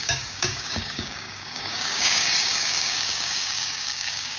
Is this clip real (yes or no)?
no